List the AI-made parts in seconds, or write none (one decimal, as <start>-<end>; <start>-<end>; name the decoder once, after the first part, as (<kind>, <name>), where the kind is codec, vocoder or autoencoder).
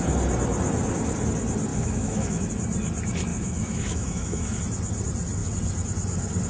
1.7-2.5 (autoencoder, DAC-VAE); 3.3-4.6